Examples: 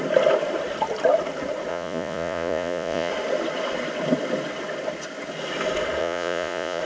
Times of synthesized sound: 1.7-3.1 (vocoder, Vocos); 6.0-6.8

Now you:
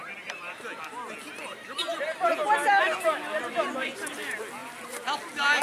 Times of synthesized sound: 0.0-0.6 (vocoder, BigVGAN v2); 1.5-2.3

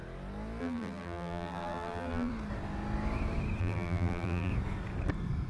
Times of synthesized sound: 0.6-2.3 (vocoder, BigVGAN v2); 3.6-4.5

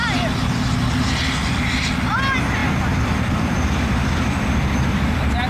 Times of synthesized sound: none

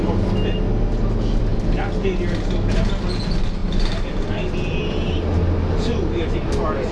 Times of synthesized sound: 3.6-4.1 (vocoder, BigVGAN v2)

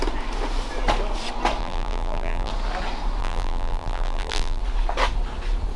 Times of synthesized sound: 1.6-2.5 (vocoder, BigVGAN v2); 3.2-4.6

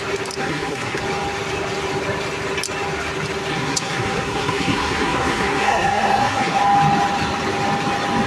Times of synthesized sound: 0.4-1.0 (codec, SNAC); 3.5-6.6